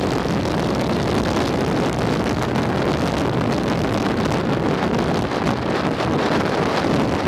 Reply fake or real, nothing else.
real